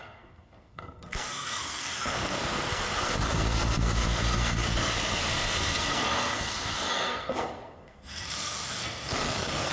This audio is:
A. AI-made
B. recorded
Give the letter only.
A